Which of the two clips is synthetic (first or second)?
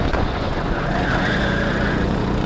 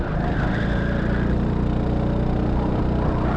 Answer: first